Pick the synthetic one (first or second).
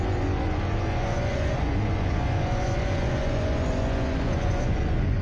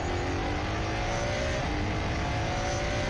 first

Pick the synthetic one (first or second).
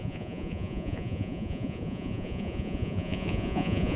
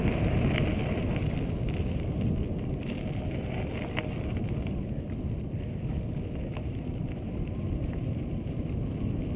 first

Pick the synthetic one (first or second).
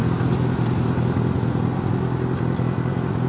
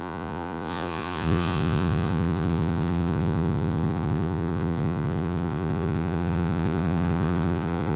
second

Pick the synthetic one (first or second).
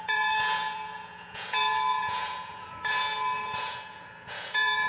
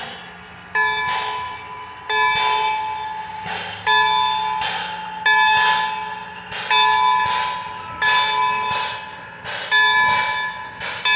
first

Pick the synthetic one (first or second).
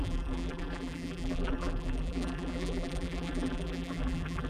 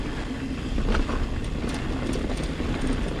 first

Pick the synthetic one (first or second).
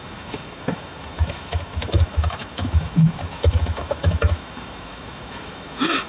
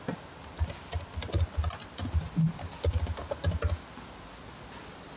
first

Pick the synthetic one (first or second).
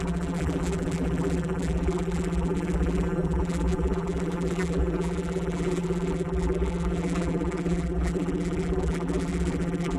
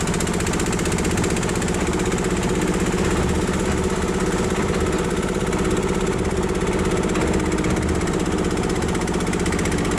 first